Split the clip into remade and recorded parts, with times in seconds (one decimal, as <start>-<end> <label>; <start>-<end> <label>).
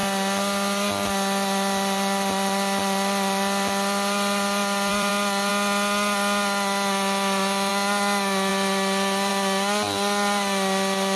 0.0-5.1 remade; 5.1-11.2 recorded